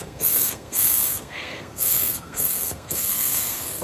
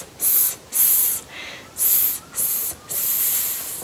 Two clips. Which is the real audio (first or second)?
second